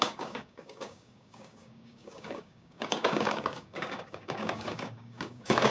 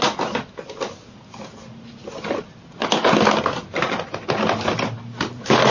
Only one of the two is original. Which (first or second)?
second